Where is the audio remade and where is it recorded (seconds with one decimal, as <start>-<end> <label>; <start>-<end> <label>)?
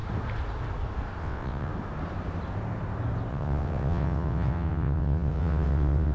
0.0-1.2 recorded; 1.2-1.7 remade; 1.7-3.3 recorded; 3.3-6.1 remade